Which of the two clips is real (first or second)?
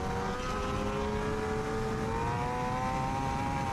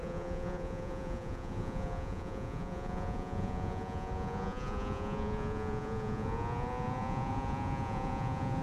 first